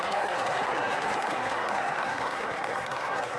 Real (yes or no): no